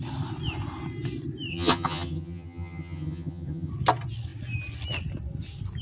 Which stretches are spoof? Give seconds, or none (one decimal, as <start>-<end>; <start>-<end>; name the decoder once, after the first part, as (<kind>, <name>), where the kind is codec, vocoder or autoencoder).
1.5-3.7 (vocoder, HiFi-GAN)